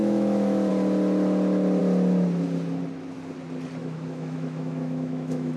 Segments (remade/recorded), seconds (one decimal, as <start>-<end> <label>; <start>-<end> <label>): 0.0-0.7 remade; 0.7-3.8 recorded; 3.8-5.6 remade